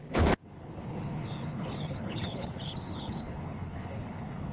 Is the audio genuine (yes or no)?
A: no